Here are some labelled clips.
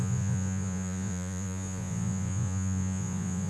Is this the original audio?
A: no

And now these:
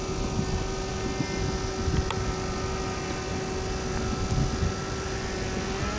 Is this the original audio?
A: yes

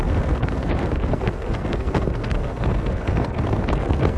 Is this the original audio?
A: no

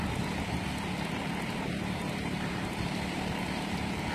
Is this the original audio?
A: no